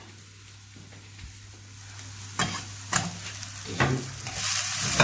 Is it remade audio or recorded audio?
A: recorded